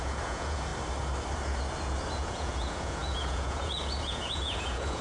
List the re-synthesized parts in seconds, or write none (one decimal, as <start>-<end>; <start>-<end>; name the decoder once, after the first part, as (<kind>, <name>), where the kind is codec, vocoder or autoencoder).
0.0-0.7 (vocoder, Vocos); 2.2-5.0